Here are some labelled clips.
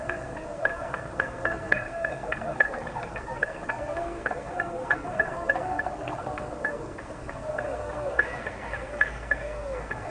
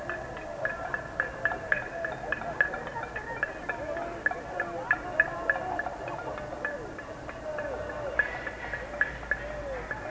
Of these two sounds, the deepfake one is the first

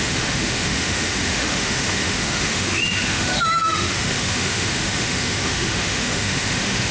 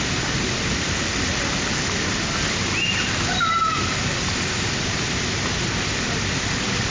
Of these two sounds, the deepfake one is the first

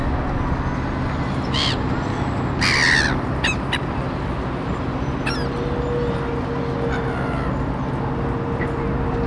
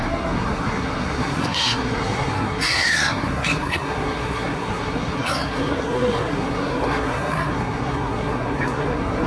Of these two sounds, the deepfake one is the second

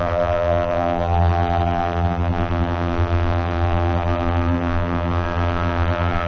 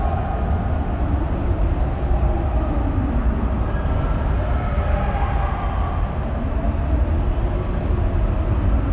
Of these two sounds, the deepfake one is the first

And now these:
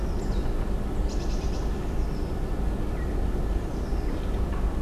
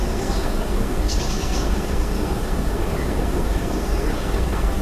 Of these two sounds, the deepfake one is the second